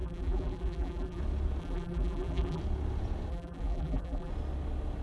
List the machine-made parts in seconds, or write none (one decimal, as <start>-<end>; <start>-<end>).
0.0-1.2; 1.6-2.6; 3.3-4.3